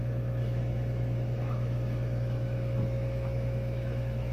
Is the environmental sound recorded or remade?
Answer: remade